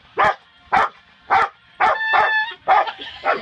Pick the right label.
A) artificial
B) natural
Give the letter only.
B